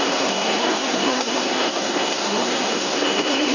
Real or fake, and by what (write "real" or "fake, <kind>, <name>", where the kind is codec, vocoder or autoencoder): fake, codec, SNAC